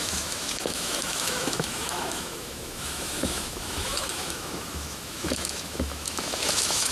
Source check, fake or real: fake